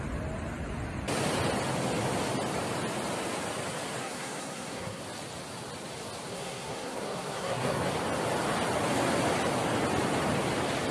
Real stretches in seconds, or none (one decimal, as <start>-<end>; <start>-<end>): 0.0-4.0; 5.0-6.3; 7.8-10.9